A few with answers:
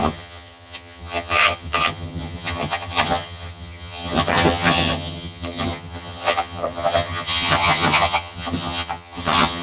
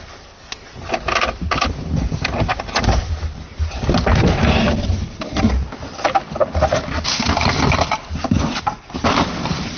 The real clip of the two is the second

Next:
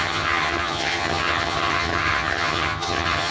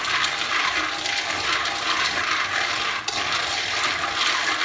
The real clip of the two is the second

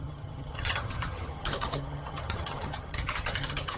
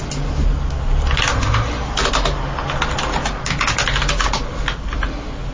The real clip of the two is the second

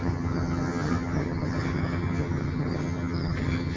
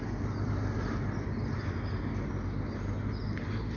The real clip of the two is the second